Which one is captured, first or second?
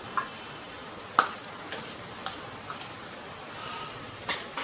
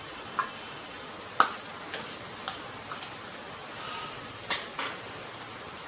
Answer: second